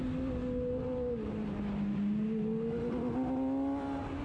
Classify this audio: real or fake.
real